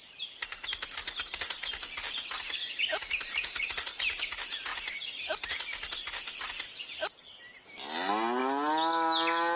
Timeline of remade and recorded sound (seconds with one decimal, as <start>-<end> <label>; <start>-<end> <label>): 0.0-1.0 recorded; 1.0-4.3 remade; 4.3-9.6 recorded